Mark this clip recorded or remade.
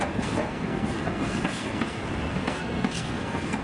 remade